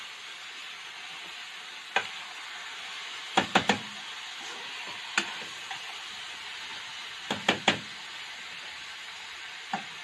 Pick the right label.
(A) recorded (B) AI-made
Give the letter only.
A